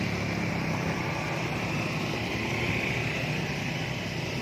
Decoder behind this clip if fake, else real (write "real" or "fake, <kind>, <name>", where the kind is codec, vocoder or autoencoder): real